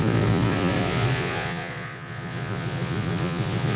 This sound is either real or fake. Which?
fake